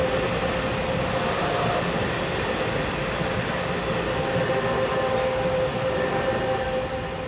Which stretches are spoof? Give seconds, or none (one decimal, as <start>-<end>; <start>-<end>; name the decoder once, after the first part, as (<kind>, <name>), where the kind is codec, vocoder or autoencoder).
none